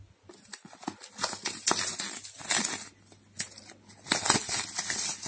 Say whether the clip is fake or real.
real